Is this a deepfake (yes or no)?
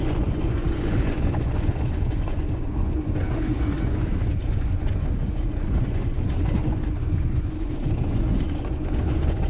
yes